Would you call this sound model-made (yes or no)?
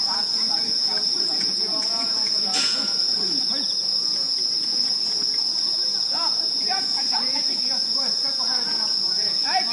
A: yes